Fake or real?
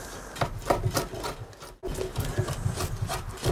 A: real